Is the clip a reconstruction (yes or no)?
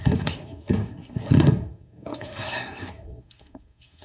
yes